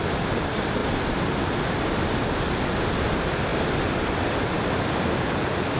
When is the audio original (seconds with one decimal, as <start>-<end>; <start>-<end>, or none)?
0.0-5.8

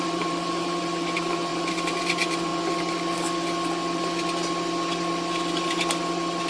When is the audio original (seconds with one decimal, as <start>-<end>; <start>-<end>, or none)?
2.5-6.5

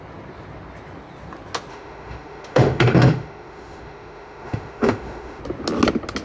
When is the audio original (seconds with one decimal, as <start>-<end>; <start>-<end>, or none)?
0.0-1.7; 5.4-6.2